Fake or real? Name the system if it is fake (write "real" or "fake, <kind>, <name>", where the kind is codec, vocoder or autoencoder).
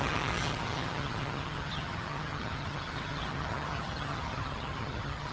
fake, vocoder, HiFi-GAN